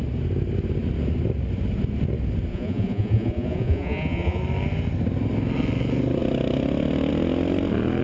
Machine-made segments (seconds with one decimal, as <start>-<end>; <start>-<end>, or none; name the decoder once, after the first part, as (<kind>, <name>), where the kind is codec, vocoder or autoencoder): 2.5-4.4 (vocoder, Vocos)

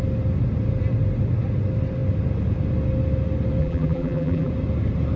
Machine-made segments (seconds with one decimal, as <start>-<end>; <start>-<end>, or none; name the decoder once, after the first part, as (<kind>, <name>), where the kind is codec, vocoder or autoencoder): 3.6-4.5 (vocoder, BigVGAN v2)

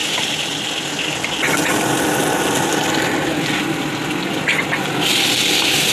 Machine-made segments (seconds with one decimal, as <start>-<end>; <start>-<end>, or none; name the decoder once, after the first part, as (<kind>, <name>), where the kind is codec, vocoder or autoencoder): none

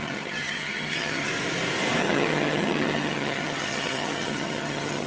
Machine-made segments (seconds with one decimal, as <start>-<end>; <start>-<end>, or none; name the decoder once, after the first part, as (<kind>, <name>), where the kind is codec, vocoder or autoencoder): 0.0-1.3 (vocoder, HiFi-GAN); 2.0-5.1

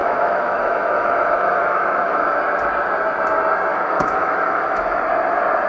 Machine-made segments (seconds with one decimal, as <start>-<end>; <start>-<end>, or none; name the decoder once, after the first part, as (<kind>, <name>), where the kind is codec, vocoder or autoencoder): 0.0-2.4 (autoencoder, DAC-VAE); 3.7-5.0

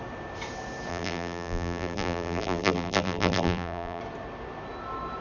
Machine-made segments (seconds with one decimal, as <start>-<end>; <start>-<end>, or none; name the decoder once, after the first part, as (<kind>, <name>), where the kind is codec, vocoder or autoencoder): 0.9-4.0 (vocoder, BigVGAN v2)

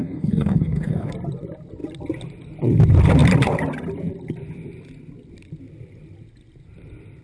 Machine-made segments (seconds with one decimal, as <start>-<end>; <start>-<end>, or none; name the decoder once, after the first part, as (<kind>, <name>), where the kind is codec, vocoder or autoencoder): 0.0-1.1 (codec, DAC)